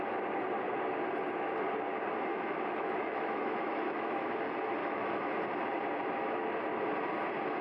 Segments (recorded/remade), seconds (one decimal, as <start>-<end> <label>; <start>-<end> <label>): 0.0-2.3 recorded; 2.3-4.2 remade; 4.2-4.8 recorded; 4.8-5.3 remade; 5.3-7.6 recorded